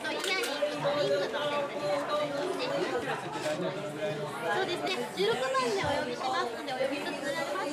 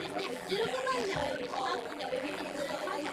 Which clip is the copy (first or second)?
second